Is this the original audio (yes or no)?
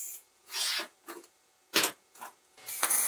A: no